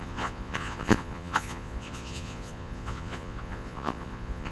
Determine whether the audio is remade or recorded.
remade